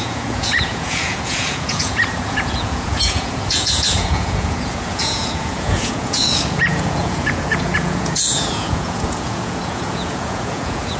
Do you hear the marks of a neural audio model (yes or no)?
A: yes